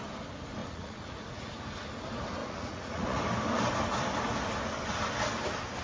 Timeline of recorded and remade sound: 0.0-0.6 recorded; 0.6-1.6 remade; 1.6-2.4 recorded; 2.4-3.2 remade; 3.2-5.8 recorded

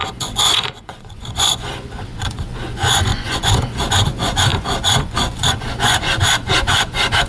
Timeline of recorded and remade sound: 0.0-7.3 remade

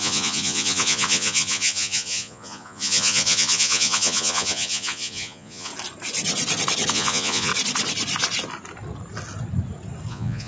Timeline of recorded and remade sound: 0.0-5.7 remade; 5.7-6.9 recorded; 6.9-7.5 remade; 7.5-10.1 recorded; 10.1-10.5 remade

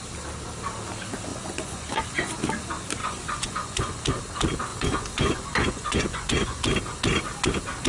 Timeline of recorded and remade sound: 0.0-1.3 recorded; 1.3-2.3 remade; 2.3-3.0 recorded; 3.0-4.0 remade; 4.0-4.7 recorded; 4.7-6.6 remade; 6.6-7.9 recorded

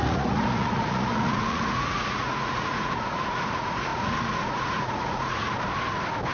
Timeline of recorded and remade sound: 0.0-5.4 remade; 5.4-6.3 recorded

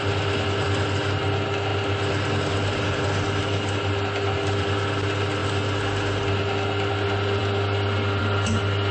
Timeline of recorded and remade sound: 0.0-8.9 recorded